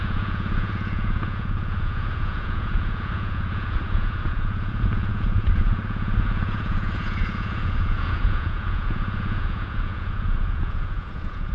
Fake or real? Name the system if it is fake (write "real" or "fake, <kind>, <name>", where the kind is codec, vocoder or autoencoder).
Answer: fake, vocoder, Vocos